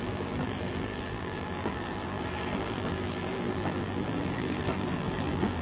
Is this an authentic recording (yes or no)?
no